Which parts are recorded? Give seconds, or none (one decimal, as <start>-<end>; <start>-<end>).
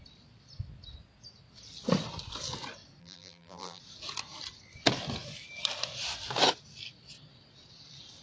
0.0-3.0; 3.8-8.2